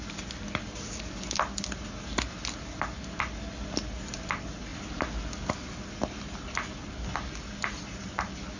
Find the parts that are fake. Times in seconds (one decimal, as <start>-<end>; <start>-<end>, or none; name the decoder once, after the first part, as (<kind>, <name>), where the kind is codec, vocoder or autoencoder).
none